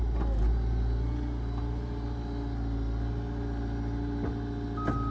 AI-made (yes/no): no